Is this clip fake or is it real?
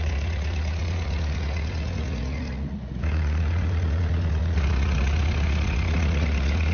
fake